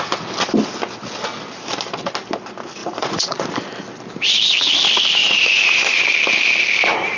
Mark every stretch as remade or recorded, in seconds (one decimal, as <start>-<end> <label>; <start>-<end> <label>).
0.0-2.8 recorded; 2.8-3.5 remade; 3.5-5.2 recorded; 5.2-6.0 remade; 6.0-7.2 recorded